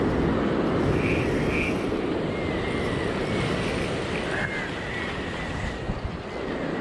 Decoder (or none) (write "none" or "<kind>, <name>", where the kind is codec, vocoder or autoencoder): none